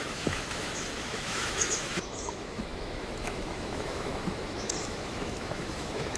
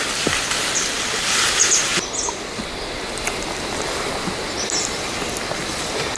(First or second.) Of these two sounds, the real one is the second